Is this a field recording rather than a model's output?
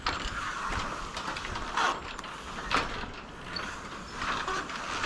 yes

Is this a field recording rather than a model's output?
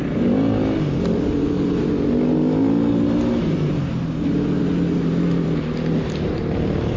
yes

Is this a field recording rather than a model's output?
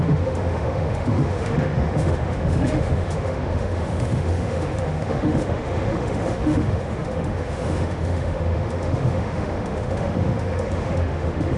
no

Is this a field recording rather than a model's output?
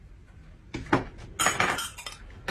yes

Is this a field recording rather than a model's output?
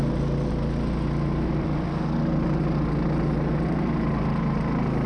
yes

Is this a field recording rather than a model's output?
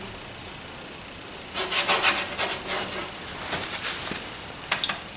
yes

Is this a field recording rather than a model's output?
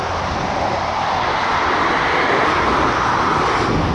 no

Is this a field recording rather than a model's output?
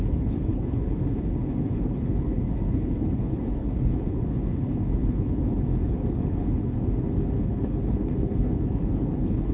no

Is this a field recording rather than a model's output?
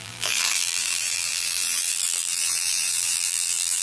no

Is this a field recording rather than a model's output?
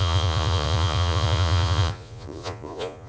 no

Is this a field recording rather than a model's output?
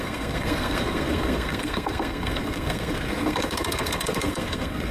no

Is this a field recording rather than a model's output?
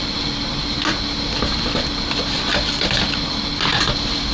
yes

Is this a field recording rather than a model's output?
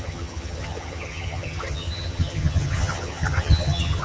no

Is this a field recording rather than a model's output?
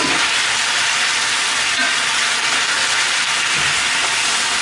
yes